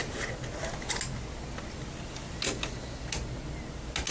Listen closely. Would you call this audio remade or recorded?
recorded